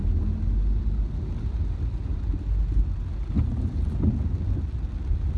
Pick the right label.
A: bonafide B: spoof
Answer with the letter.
A